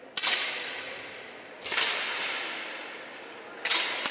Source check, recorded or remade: recorded